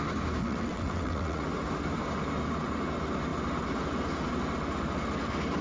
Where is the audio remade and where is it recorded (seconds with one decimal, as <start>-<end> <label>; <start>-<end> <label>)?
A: 0.0-0.4 recorded; 0.4-1.4 remade; 1.4-5.6 recorded